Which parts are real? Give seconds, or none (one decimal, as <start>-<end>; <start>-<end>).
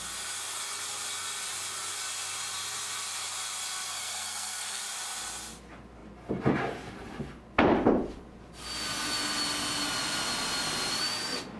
0.0-3.9; 4.8-11.6